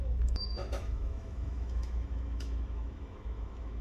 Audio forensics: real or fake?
fake